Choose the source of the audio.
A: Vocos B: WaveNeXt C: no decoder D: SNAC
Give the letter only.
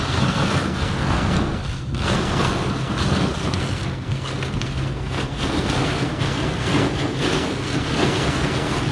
D